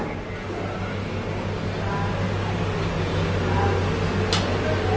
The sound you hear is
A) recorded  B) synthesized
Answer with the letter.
A